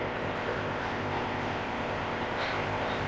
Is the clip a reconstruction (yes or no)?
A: yes